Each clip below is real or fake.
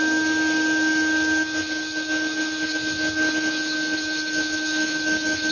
fake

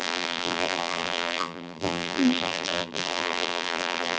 fake